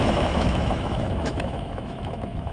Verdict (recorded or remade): remade